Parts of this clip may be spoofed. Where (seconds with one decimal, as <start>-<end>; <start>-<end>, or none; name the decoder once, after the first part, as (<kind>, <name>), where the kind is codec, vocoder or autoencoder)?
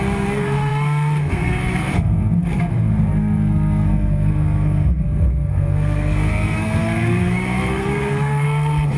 0.0-9.0 (codec, SNAC)